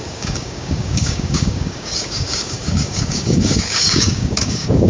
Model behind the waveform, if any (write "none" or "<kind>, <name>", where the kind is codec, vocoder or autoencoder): codec, DAC